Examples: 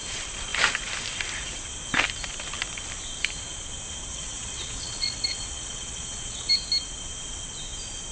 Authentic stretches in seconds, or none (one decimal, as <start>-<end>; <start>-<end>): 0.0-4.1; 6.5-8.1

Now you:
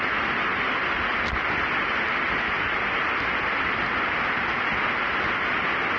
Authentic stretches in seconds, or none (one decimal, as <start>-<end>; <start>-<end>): 0.0-6.0

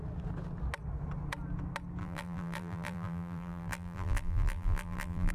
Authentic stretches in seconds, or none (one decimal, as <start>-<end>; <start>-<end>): 0.0-2.0

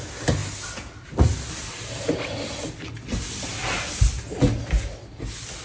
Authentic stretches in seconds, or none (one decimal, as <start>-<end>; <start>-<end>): 0.0-5.6

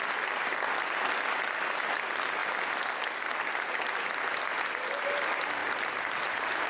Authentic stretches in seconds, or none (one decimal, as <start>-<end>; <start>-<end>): 0.0-6.7

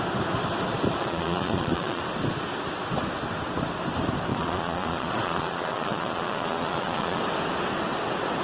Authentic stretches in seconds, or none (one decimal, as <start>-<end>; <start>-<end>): 0.0-1.0; 2.0-4.3; 7.2-8.4